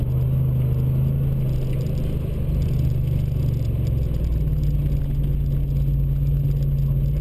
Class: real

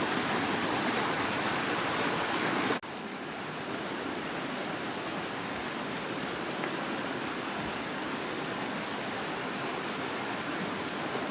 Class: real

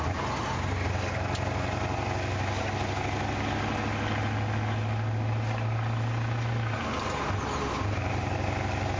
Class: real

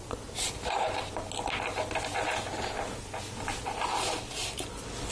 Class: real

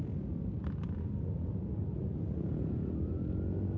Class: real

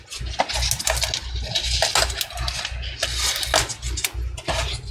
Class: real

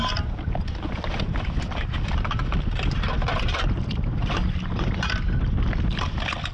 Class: real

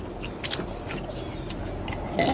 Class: real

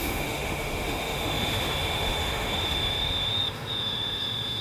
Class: fake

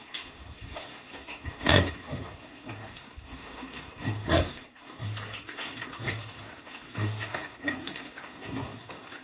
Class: fake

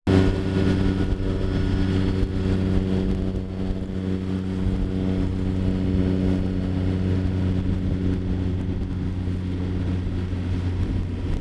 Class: real